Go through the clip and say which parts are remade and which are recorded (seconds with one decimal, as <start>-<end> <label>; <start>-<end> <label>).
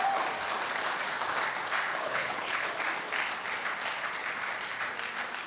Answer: 0.0-1.9 recorded; 1.9-2.7 remade; 2.7-5.5 recorded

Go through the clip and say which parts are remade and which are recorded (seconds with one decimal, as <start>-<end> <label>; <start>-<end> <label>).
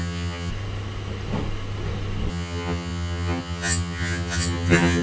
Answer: 0.0-0.5 remade; 0.5-2.3 recorded; 2.3-5.0 remade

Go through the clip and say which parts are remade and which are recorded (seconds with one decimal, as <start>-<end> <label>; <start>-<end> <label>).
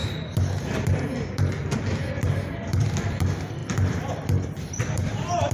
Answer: 0.0-3.1 recorded; 3.1-5.5 remade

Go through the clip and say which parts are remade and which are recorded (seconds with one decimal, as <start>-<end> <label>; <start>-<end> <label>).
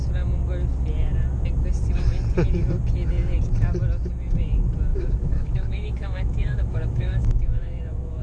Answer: 0.0-4.9 recorded; 4.9-8.2 remade